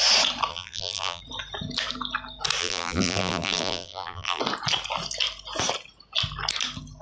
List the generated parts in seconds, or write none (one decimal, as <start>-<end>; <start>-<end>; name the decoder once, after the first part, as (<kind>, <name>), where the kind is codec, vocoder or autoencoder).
0.5-1.2 (vocoder, BigVGAN v2); 2.6-4.4